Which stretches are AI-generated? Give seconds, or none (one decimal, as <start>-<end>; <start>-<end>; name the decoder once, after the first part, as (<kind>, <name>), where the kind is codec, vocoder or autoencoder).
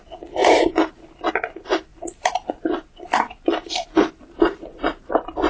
3.7-5.5 (vocoder, BigVGAN v2)